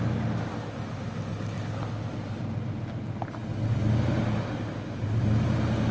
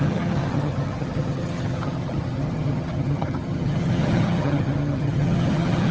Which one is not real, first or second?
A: second